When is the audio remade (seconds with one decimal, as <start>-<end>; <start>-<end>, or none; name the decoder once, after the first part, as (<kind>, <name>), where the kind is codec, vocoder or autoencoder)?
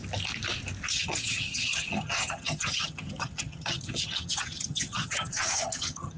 0.9-6.2 (vocoder, HiFi-GAN)